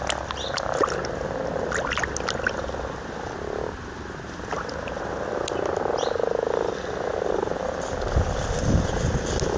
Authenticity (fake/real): real